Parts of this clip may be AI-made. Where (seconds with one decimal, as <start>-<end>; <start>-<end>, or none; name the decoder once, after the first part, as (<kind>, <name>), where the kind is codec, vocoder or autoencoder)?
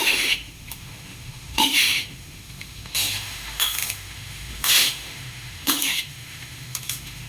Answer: 0.0-7.3 (autoencoder, DAC-VAE)